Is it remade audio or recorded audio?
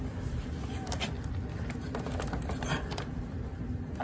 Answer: recorded